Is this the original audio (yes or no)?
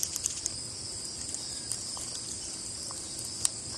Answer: yes